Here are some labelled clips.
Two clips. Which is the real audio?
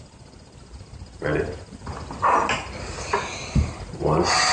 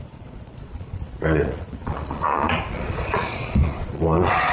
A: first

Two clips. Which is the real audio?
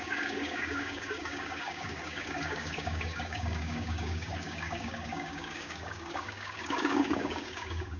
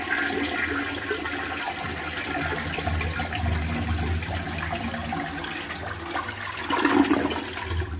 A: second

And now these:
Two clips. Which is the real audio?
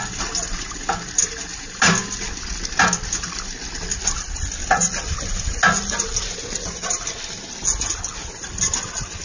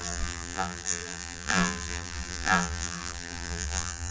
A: first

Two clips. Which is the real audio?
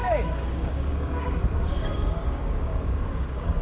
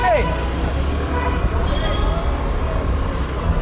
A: second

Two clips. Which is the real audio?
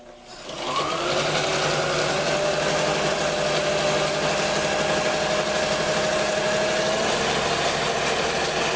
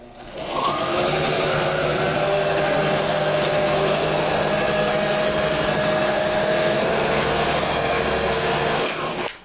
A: first